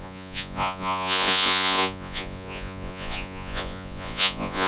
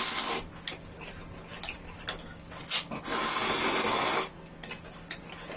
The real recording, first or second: second